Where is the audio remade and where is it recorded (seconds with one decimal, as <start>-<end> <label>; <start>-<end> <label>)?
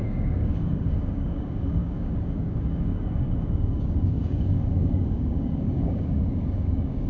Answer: 0.0-7.1 remade